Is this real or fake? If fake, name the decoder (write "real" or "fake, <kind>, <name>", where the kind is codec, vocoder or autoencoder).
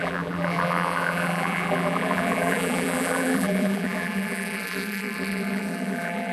fake, vocoder, BigVGAN v2